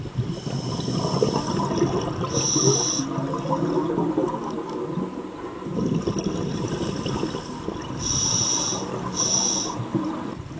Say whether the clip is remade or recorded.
recorded